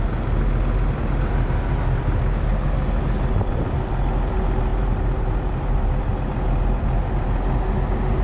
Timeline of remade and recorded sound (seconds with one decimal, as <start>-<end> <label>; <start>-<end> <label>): 0.0-4.7 recorded; 4.7-5.9 remade; 5.9-8.2 recorded